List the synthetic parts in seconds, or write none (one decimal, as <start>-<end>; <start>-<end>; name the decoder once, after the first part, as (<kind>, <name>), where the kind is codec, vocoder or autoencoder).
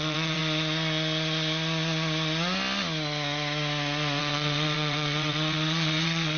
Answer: 0.0-0.4 (vocoder, WaveNeXt); 4.2-6.4